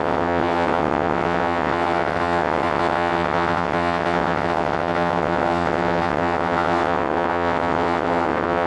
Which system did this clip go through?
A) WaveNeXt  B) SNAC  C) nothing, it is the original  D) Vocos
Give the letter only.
A